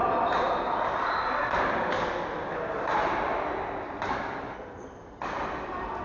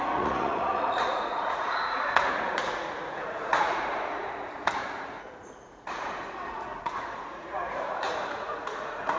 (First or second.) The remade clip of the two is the second